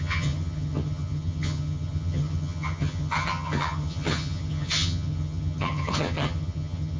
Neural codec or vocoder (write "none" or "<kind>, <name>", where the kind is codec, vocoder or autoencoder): vocoder, HiFi-GAN